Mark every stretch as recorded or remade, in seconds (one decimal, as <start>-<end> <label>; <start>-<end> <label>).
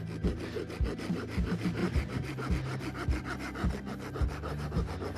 0.0-1.8 recorded; 1.8-2.5 remade; 2.5-5.2 recorded